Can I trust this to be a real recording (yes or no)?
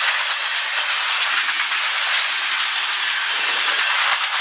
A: yes